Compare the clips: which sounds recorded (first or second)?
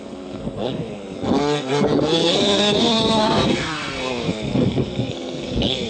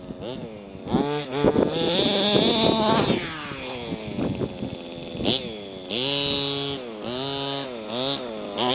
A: second